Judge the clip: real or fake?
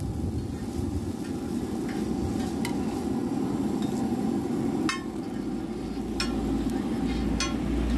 real